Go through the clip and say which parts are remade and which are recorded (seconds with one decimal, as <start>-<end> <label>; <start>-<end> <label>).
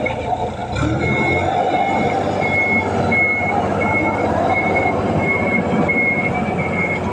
0.0-0.6 remade; 0.6-4.3 recorded; 4.3-7.1 remade